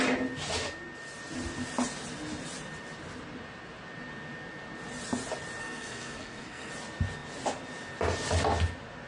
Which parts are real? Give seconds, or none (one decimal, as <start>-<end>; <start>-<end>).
0.0-5.6; 6.7-9.1